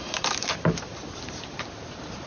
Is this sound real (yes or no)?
no